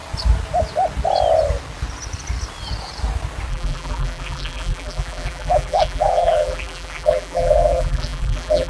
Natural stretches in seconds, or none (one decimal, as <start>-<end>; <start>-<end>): 0.0-3.5